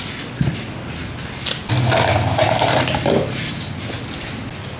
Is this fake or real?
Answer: real